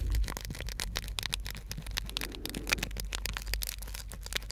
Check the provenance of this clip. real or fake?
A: real